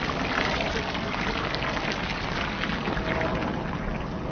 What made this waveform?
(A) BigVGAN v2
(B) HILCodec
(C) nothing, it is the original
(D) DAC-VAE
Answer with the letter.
C